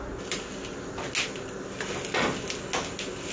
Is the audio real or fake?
real